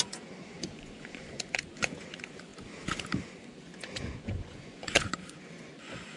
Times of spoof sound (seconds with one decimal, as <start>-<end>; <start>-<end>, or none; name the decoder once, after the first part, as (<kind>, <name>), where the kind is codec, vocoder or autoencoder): 0.0-2.5 (vocoder, Vocos); 3.3-6.2